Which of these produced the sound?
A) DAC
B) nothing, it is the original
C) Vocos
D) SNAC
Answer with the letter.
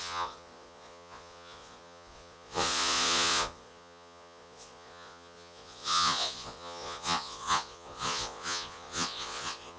C